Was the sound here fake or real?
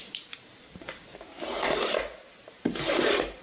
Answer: fake